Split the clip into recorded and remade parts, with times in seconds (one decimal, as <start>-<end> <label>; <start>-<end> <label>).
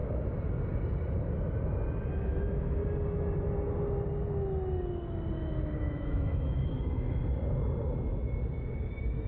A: 0.0-2.2 recorded; 2.2-2.8 remade; 2.8-5.8 recorded; 5.8-7.2 remade; 7.2-8.9 recorded; 8.9-9.3 remade